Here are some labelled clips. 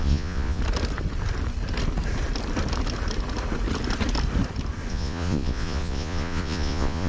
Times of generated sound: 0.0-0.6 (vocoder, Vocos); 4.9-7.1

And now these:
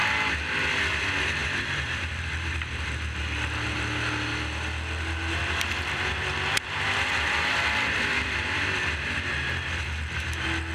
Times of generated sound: 1.4-2.5 (vocoder, BigVGAN v2); 5.4-9.3

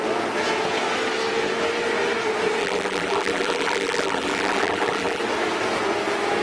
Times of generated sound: 2.6-5.2 (vocoder, BigVGAN v2)